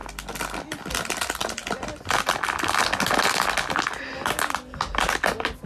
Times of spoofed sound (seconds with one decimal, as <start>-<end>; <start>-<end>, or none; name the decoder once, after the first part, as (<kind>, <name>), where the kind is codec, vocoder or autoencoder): none